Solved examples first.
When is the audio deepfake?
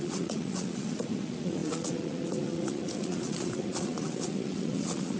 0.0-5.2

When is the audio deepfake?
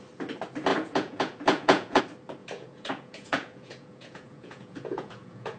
0.7-2.0; 2.4-5.6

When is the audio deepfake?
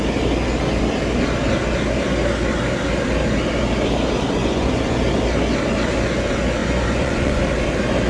4.4-5.0; 6.6-7.4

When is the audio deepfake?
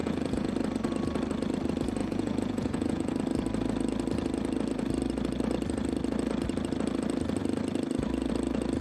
0.0-0.5; 2.0-3.1